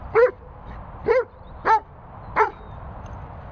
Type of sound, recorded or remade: recorded